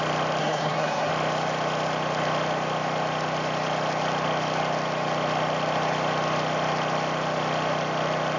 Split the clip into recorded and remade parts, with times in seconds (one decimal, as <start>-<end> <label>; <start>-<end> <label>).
0.0-0.4 recorded; 0.4-1.1 remade; 1.1-8.4 recorded